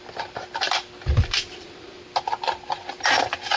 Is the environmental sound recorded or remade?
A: remade